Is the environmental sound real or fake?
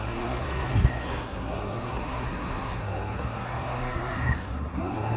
fake